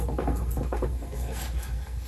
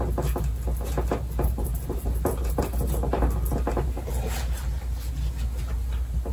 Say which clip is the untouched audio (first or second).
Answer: second